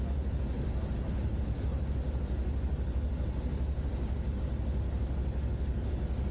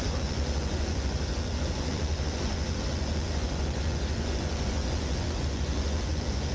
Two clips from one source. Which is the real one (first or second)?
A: first